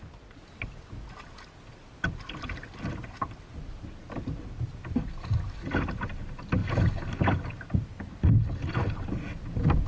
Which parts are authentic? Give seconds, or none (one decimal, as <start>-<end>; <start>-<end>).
0.0-9.9